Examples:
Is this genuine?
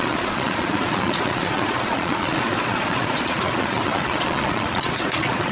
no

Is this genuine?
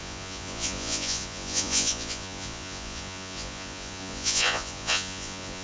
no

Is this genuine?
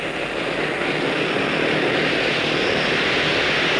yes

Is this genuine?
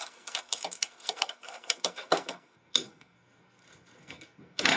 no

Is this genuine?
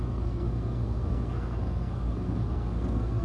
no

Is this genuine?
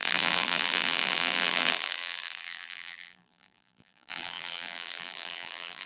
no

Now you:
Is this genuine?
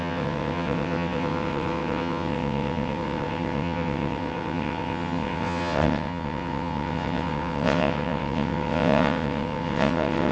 no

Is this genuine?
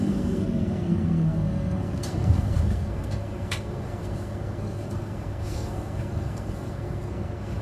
no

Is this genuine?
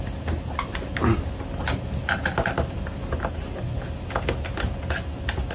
yes